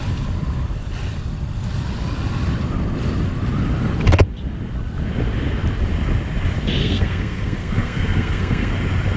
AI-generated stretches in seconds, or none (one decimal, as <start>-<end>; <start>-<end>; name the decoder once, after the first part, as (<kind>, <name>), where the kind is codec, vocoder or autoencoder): 6.8-8.7 (codec, SNAC)